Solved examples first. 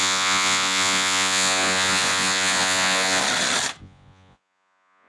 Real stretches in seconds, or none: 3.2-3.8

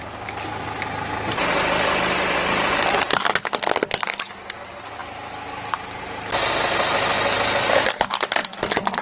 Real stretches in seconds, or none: 0.0-8.4

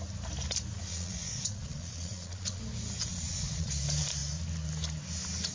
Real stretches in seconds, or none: 0.0-0.9; 2.6-3.1; 3.7-5.5

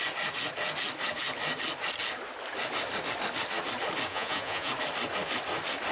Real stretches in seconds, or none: 0.0-4.1; 4.7-5.9